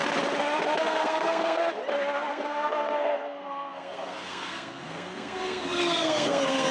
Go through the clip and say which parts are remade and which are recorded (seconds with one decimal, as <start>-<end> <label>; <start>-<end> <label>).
0.0-0.8 recorded; 0.8-1.6 remade; 1.6-2.3 recorded; 2.3-6.7 remade